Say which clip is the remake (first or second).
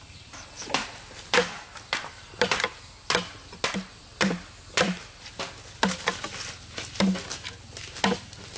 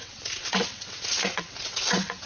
second